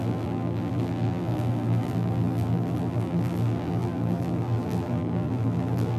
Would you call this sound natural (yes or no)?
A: no